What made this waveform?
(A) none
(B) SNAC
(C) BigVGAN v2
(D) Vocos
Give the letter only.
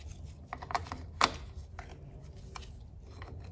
A